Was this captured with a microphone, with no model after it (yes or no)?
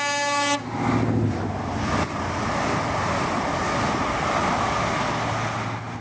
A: yes